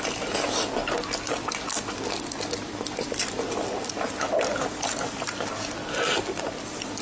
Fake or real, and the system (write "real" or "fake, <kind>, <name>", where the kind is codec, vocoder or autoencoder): real